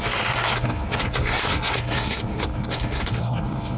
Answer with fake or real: fake